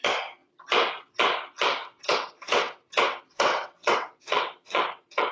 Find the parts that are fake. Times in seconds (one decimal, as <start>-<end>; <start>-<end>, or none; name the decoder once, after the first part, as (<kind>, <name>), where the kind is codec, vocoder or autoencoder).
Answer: 1.8-5.3 (vocoder, WaveNeXt)